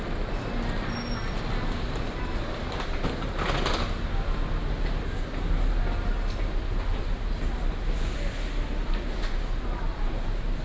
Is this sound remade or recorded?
recorded